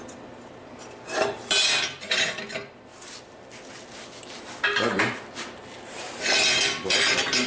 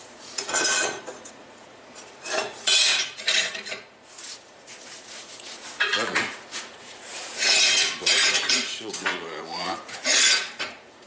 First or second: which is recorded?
first